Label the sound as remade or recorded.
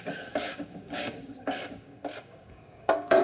remade